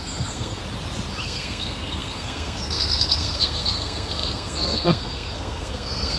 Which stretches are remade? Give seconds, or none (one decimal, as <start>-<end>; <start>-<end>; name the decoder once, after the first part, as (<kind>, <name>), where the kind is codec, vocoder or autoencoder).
0.0-0.6 (codec, SNAC); 1.2-6.2